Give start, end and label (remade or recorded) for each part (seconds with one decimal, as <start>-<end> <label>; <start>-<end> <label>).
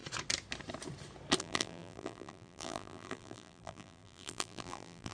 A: 0.0-1.4 recorded; 1.4-5.1 remade